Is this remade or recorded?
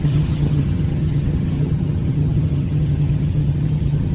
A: remade